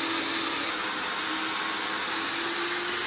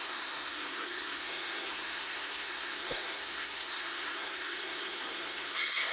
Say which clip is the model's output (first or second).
second